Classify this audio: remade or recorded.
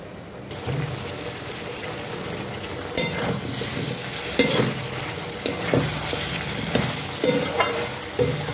recorded